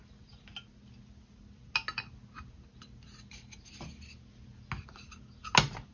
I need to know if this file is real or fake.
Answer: real